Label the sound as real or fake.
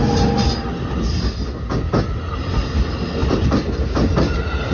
real